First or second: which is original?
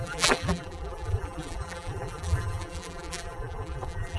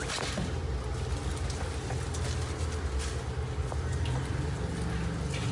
second